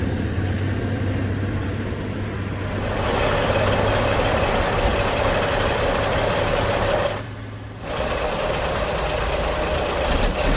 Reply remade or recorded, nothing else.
remade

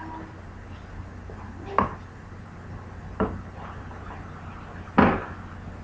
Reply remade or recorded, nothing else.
recorded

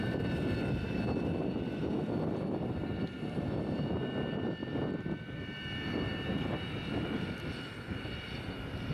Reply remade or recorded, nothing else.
remade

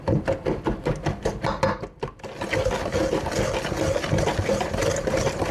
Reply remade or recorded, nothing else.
recorded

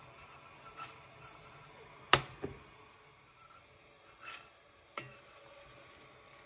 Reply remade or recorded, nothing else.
recorded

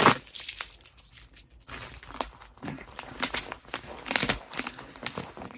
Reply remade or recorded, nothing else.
recorded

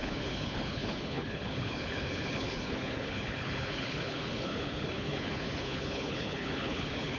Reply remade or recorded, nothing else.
remade